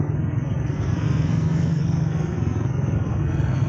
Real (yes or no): no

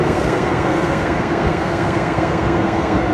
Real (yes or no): no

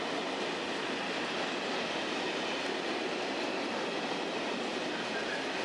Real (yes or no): yes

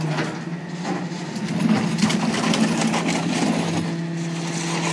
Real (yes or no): yes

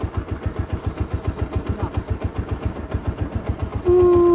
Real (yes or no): yes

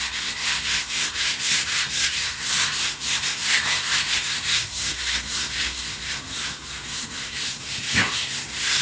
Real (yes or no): no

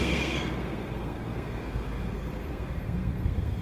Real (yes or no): no